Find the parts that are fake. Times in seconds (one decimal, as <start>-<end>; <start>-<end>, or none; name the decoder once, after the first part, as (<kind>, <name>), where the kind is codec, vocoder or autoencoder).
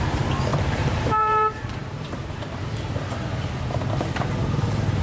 0.5-2.6 (vocoder, BigVGAN v2)